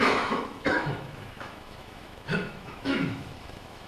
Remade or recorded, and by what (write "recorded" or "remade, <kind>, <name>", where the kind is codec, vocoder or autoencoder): remade, autoencoder, DAC-VAE